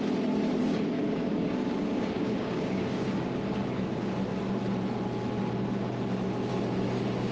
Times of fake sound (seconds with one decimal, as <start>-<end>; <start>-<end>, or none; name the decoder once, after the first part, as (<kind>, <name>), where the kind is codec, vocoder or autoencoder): 0.6-3.9 (codec, DAC)